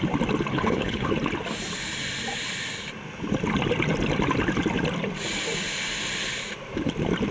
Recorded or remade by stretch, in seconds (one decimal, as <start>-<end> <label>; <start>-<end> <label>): 0.0-0.5 recorded; 0.5-1.1 remade; 1.1-7.3 recorded